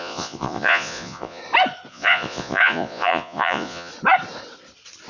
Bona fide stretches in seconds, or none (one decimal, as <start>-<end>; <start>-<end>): 1.4-1.9; 3.9-5.1